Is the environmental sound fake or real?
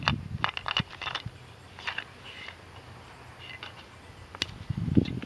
real